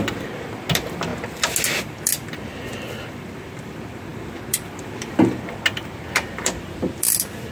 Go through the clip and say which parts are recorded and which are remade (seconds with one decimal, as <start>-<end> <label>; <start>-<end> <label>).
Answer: 0.0-1.1 remade; 1.1-1.8 recorded; 1.8-7.5 remade